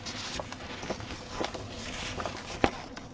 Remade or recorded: recorded